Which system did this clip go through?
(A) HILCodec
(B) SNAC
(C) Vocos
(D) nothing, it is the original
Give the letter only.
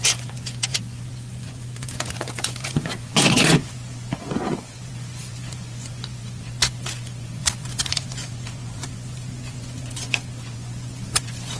C